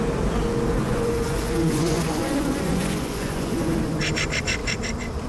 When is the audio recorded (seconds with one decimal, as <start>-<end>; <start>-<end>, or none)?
0.0-0.8; 4.0-5.3